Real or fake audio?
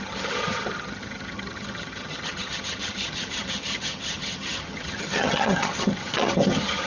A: fake